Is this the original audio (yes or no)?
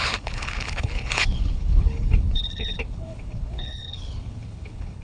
no